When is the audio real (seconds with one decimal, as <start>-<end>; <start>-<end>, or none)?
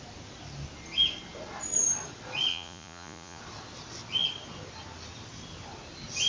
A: 0.0-2.5; 3.4-6.3